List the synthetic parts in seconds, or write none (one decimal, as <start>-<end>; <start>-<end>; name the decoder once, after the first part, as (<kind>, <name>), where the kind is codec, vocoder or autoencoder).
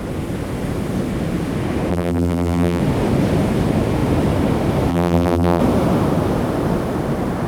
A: 1.9-2.8 (vocoder, BigVGAN v2); 4.9-5.6